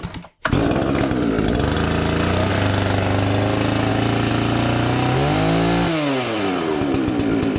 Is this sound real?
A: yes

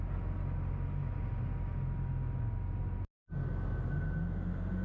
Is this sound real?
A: yes